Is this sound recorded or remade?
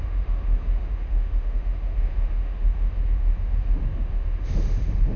remade